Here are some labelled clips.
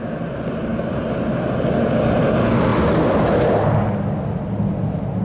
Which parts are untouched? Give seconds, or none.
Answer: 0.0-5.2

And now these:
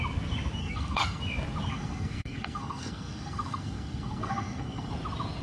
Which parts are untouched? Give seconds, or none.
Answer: 0.0-0.6; 1.2-1.7; 4.9-5.4

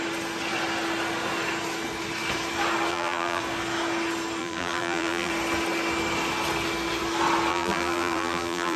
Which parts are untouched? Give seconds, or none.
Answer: 0.0-2.9; 3.4-4.4; 5.3-7.5

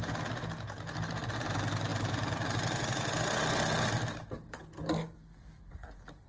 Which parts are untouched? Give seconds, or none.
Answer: 0.0-6.3